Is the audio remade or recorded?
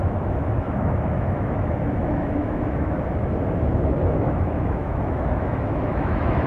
remade